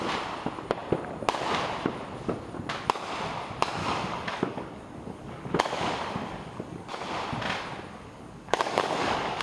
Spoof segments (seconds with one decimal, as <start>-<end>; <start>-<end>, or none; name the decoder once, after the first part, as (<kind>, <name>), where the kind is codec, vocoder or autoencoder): 3.8-6.9 (codec, DAC); 7.9-9.4